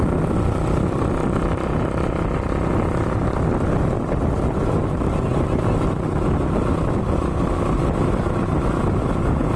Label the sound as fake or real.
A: real